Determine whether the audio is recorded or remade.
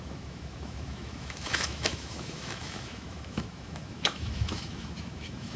remade